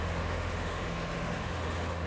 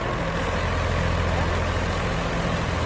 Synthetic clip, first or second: first